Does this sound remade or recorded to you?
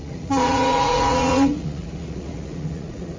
remade